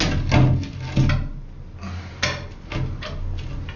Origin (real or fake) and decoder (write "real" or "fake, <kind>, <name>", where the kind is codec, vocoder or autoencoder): real